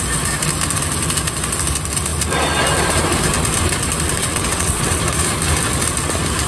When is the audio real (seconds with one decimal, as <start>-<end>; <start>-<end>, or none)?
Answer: 0.0-4.2; 5.0-6.5

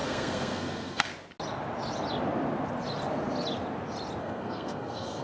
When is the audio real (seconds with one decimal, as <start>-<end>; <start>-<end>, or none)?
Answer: 1.1-4.2

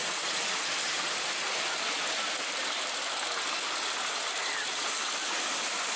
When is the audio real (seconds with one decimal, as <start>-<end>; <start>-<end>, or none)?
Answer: none